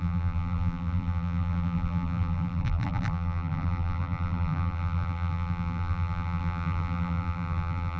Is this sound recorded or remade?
remade